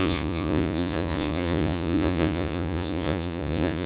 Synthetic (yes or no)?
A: yes